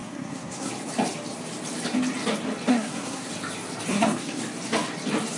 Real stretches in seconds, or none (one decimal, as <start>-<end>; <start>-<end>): 0.7-2.7; 3.3-3.9; 4.4-5.4